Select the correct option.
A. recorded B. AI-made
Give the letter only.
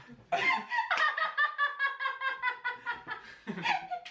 A